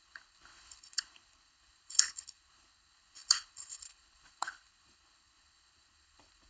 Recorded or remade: remade